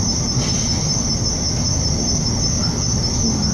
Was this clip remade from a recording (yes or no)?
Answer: no